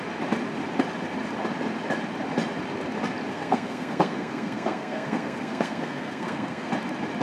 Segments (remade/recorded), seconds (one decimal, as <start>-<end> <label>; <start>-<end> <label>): 0.0-3.3 recorded; 3.3-6.7 remade; 6.7-7.2 recorded